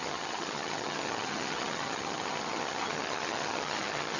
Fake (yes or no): yes